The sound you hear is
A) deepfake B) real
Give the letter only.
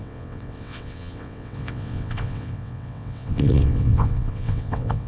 A